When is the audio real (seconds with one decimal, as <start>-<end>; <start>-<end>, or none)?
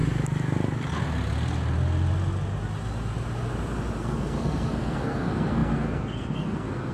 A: 0.0-4.0